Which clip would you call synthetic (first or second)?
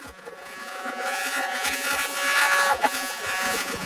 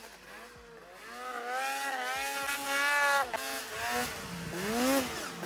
first